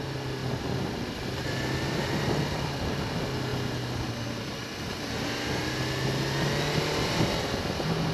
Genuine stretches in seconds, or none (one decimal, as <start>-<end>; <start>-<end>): 0.0-0.4; 2.8-8.1